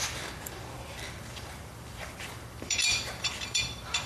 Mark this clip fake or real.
fake